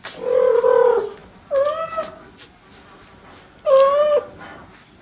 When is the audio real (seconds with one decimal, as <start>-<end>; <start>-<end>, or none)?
0.0-5.0